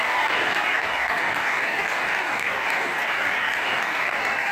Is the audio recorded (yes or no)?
no